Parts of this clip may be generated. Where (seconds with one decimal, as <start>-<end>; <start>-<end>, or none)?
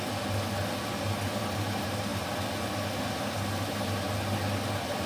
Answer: none